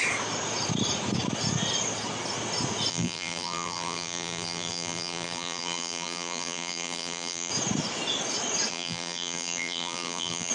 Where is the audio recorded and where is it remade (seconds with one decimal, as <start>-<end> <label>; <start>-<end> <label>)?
0.0-2.9 recorded; 2.9-7.5 remade; 7.5-8.7 recorded; 8.7-10.5 remade